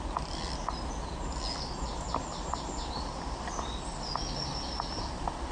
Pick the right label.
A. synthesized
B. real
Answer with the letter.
B